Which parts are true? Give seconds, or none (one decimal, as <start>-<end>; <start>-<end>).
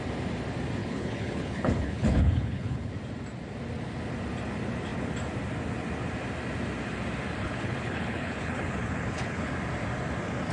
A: 0.0-0.8; 2.9-7.4; 9.5-10.5